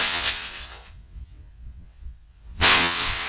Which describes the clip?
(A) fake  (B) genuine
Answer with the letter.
A